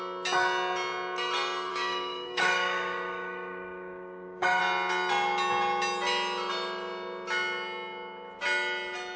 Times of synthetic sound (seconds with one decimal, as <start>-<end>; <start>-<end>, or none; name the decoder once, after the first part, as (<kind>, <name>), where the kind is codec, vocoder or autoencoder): 1.7-4.6 (codec, DAC)